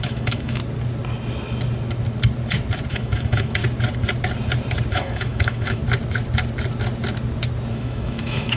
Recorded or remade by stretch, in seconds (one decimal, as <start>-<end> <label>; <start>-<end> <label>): 0.0-0.6 remade; 0.6-2.9 recorded; 2.9-3.6 remade; 3.6-4.9 recorded; 4.9-5.8 remade; 5.8-7.7 recorded; 7.7-8.6 remade

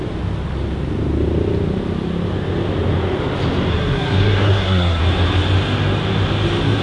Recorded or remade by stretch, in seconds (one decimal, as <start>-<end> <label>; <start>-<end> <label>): 0.0-3.7 recorded; 3.7-5.0 remade; 5.0-6.8 recorded

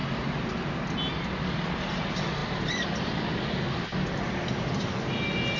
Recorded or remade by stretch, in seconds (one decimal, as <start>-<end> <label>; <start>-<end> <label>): 0.0-5.6 recorded

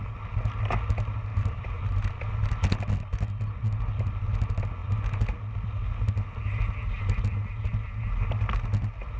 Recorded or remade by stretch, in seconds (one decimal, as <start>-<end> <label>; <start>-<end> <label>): 0.0-1.3 recorded; 1.3-2.1 remade; 2.1-9.2 recorded

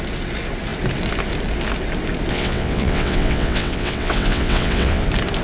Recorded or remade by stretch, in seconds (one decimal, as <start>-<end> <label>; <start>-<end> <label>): 0.0-2.3 recorded; 2.3-5.0 remade; 5.0-5.4 recorded

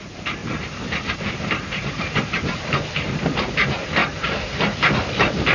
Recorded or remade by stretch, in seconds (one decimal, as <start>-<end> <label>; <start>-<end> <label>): 0.0-0.4 recorded; 0.4-2.5 remade; 2.5-4.0 recorded; 4.0-4.6 remade; 4.6-5.5 recorded

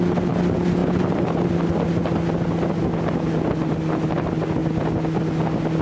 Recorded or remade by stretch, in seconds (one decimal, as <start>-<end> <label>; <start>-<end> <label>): 0.0-0.8 recorded; 0.8-1.5 remade; 1.5-5.8 recorded

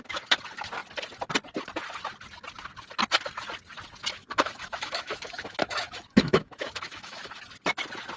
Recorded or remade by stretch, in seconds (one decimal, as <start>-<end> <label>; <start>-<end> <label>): 0.0-4.2 recorded; 4.2-7.4 remade; 7.4-8.2 recorded